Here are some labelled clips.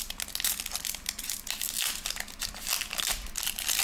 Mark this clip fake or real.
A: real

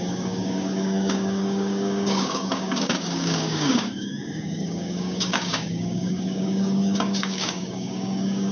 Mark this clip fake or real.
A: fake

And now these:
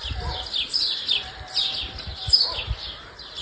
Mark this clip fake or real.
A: real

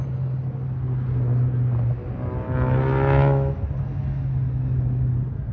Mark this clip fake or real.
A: real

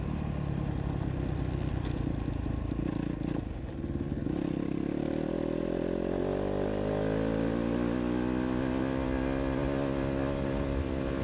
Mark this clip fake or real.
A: real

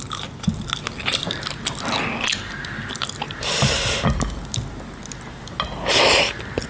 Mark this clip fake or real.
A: real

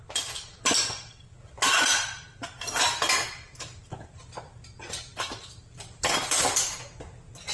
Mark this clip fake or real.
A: real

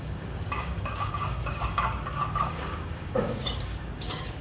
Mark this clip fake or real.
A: fake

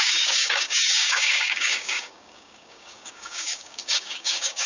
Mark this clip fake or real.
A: fake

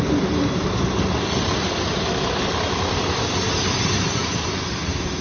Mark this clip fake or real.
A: real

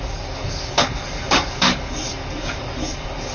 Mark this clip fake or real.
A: fake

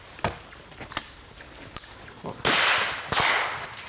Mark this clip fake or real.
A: real